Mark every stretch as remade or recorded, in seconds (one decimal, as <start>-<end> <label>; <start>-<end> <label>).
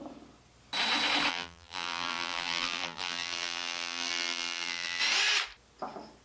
0.0-1.3 recorded; 1.3-5.0 remade; 5.0-6.2 recorded